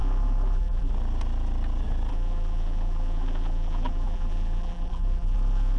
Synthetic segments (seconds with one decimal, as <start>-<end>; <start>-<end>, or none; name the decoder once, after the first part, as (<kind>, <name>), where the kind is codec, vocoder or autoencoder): 0.0-0.9 (vocoder, BigVGAN v2); 2.1-5.8